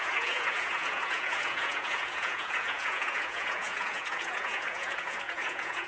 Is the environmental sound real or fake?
fake